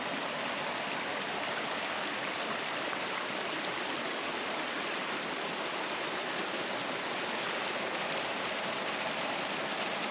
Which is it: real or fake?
real